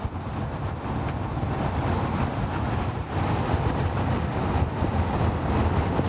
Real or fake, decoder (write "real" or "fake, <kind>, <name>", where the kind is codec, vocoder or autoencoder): real